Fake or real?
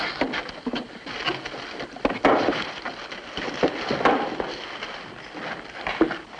real